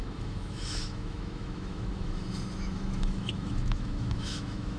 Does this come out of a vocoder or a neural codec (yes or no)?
yes